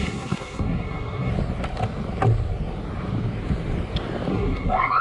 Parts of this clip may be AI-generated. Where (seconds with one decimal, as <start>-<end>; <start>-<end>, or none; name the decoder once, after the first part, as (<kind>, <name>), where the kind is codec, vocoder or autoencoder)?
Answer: 0.0-1.3 (codec, SNAC); 4.3-5.0

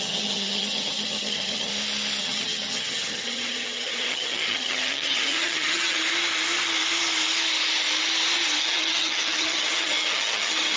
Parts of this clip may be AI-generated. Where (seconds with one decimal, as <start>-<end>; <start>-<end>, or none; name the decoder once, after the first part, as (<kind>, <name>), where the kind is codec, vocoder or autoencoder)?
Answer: 0.0-1.7 (vocoder, HiFi-GAN); 2.2-6.0; 8.6-10.8

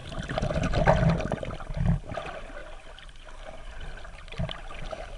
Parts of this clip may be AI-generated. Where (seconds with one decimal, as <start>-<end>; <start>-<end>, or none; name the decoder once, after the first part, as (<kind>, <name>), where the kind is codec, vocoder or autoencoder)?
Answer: none